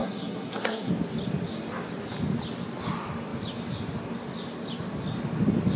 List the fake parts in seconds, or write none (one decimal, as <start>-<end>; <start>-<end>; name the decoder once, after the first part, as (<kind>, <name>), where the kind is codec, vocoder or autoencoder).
0.0-0.9 (codec, SNAC)